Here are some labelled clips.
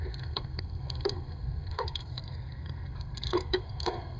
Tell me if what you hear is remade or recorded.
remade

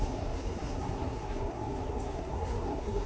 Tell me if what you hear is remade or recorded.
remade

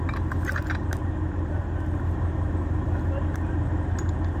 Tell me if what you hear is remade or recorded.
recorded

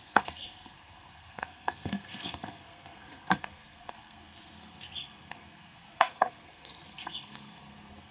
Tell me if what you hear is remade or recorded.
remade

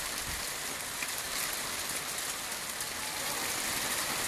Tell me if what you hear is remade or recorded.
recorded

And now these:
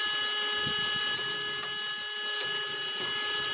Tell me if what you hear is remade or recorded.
recorded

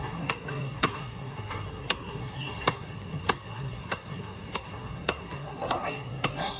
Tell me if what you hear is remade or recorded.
remade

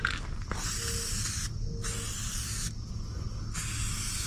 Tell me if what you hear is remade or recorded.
recorded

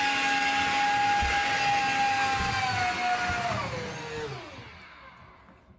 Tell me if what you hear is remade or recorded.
recorded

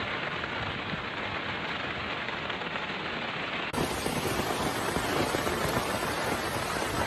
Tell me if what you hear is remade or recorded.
recorded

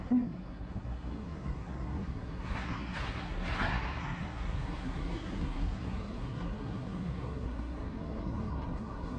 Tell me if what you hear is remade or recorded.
remade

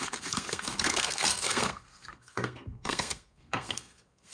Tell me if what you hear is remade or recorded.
remade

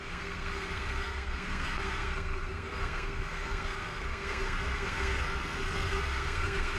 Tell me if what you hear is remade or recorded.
remade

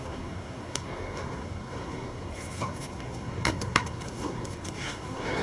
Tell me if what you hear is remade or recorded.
remade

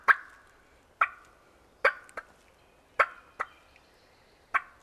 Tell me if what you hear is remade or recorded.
recorded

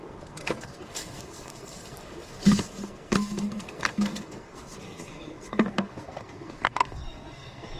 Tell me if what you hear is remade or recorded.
remade